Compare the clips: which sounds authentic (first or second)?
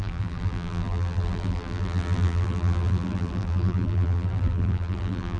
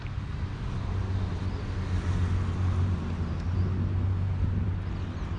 second